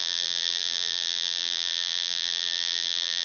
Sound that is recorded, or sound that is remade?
remade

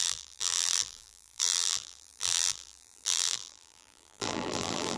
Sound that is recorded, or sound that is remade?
remade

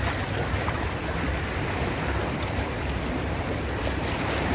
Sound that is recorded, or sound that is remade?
recorded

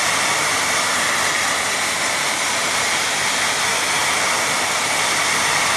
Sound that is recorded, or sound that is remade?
remade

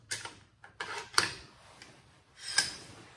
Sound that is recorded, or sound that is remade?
remade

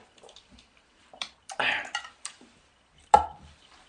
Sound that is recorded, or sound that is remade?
remade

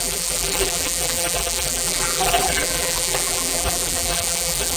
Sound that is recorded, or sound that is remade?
remade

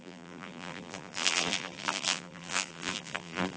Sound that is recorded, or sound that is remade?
remade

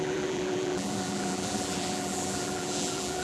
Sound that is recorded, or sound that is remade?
remade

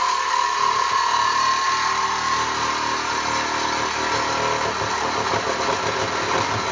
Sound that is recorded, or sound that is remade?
recorded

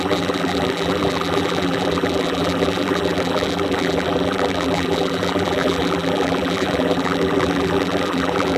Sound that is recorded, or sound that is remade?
remade